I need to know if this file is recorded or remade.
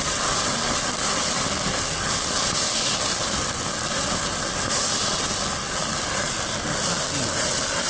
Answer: recorded